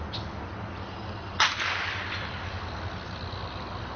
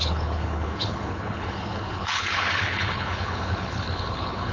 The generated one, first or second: second